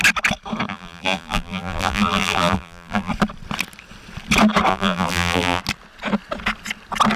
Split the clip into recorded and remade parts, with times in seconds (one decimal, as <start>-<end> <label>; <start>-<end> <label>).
0.0-0.7 recorded; 0.7-3.1 remade; 3.1-4.7 recorded; 4.7-5.6 remade; 5.6-7.2 recorded